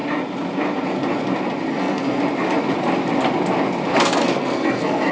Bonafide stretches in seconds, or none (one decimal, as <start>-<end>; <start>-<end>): 0.0-1.7; 2.2-3.9